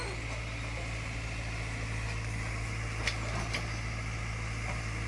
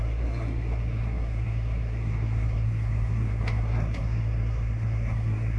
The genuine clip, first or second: first